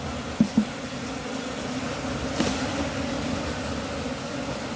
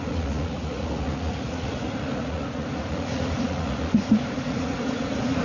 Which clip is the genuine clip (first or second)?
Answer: first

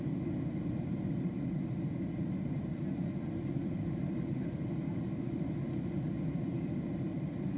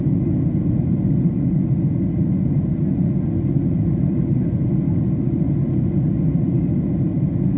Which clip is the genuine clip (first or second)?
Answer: second